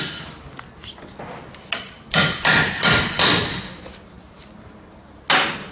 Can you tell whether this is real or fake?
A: real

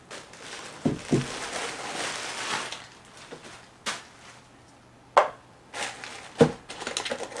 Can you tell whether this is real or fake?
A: real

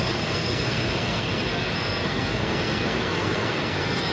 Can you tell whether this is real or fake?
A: fake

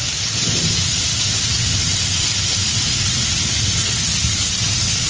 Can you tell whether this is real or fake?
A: real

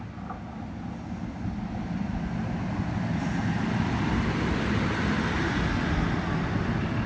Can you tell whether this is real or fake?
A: real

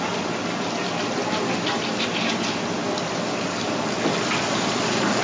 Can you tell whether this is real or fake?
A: real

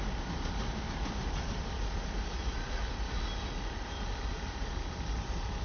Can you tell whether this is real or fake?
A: real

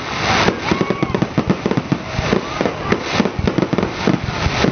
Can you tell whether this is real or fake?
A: real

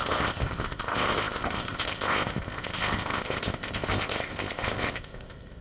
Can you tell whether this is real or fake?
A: fake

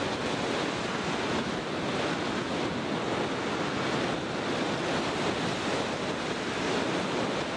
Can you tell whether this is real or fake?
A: real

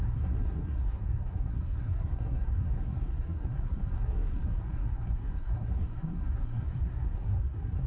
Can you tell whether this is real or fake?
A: fake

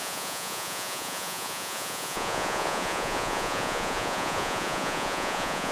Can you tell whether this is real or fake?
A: fake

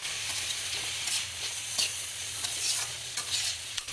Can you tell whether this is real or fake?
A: fake